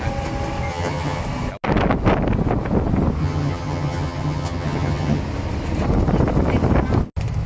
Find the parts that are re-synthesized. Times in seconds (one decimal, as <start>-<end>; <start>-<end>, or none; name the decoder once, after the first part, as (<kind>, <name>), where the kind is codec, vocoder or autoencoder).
0.7-1.2 (vocoder, HiFi-GAN); 3.2-5.2